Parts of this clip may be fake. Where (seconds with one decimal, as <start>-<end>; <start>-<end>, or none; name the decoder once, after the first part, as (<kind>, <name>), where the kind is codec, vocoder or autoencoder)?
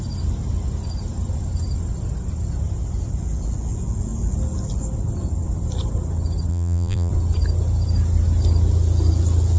6.5-7.1 (vocoder, BigVGAN v2)